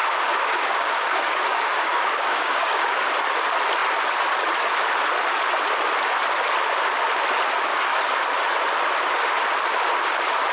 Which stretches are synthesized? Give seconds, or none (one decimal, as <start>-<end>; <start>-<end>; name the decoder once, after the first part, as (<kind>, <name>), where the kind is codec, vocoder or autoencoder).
0.0-3.1 (codec, DAC); 7.7-8.2